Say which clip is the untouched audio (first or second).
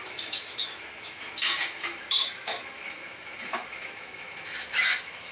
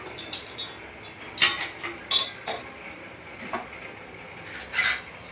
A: second